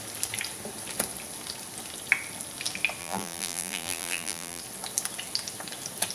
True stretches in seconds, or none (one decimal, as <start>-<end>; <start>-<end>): 0.0-3.0; 4.6-6.1